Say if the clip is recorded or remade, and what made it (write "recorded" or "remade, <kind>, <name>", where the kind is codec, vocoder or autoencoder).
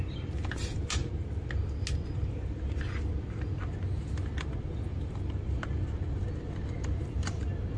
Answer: recorded